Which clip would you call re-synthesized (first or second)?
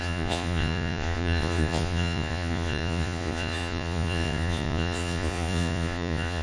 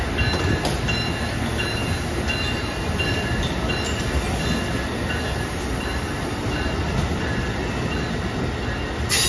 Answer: first